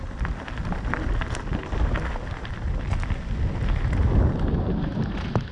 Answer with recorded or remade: recorded